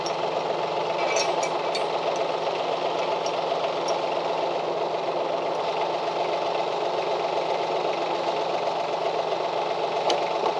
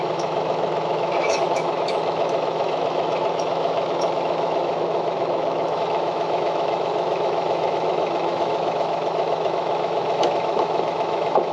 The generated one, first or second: second